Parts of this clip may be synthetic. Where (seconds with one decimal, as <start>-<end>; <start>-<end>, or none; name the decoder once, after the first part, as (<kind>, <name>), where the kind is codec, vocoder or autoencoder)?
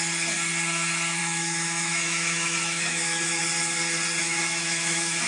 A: 1.2-3.4 (autoencoder, DAC-VAE); 4.2-5.3